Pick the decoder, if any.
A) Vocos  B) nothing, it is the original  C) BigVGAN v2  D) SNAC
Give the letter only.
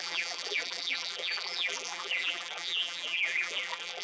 C